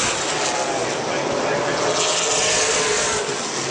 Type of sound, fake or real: real